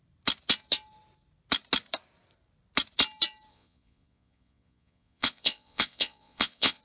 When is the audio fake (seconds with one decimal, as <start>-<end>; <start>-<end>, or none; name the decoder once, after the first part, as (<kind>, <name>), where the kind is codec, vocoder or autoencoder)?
3.5-6.8 (vocoder, Vocos)